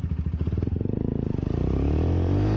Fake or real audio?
fake